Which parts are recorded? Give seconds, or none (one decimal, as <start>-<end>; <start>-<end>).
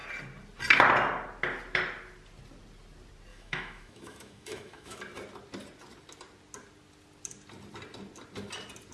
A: 0.0-3.3; 5.0-8.9